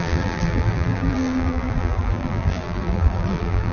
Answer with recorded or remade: remade